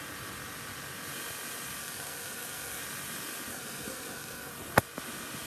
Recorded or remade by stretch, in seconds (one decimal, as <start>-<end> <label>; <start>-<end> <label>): 0.0-1.8 recorded; 1.8-2.8 remade; 2.8-3.5 recorded; 3.5-4.5 remade; 4.5-5.5 recorded